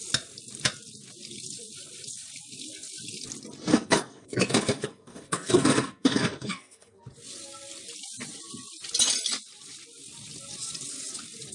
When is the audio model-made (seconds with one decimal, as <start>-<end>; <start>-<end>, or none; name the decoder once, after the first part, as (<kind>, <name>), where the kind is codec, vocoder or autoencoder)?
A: 3.7-7.0 (codec, SNAC)